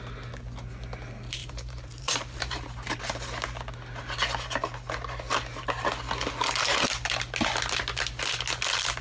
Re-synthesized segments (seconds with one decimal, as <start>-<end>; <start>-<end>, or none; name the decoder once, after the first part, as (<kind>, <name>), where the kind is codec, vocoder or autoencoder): 1.4-2.6 (vocoder, BigVGAN v2)